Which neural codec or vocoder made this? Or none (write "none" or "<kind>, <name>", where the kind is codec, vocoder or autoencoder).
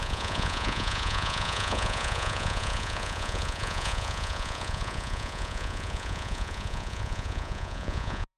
vocoder, Vocos